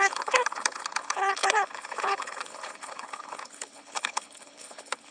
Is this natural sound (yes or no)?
no